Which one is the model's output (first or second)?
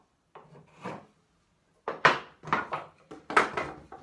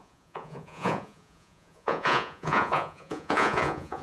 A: second